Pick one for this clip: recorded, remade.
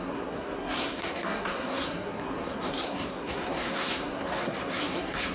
remade